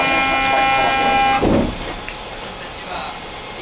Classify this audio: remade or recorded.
recorded